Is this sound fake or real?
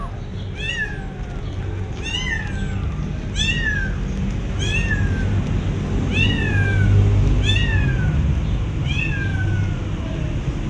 real